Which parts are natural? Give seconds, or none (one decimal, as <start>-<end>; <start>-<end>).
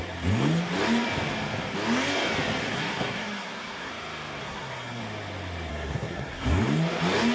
0.0-2.6; 3.9-4.4; 5.0-5.7; 6.6-7.3